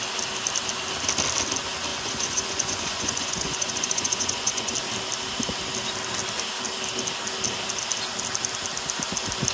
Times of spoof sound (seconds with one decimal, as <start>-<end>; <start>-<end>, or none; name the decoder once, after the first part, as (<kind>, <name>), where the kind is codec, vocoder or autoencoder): 1.9-4.7 (vocoder, Vocos)